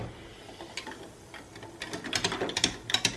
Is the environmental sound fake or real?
real